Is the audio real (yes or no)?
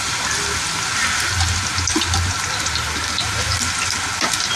yes